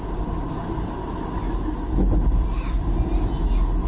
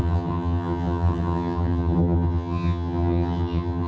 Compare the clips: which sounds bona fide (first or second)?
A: first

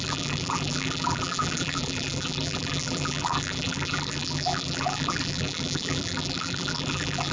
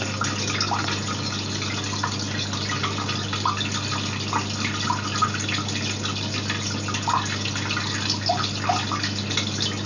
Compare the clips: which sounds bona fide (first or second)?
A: second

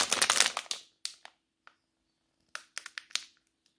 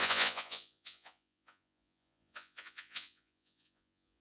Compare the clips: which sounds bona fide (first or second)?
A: first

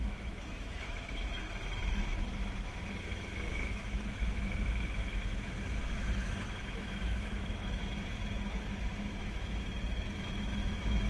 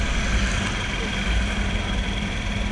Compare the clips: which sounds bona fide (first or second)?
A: second